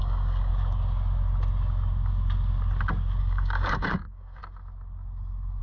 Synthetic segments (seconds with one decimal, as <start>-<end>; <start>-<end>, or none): 0.0-0.5; 3.2-4.4